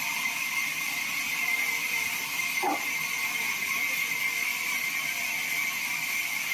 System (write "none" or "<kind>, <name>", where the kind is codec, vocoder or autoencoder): vocoder, BigVGAN v2